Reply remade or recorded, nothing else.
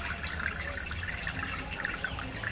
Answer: recorded